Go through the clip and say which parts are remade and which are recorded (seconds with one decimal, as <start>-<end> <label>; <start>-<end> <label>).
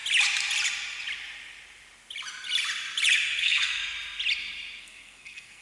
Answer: 0.0-3.4 recorded; 3.4-3.8 remade; 3.8-4.8 recorded; 4.8-5.6 remade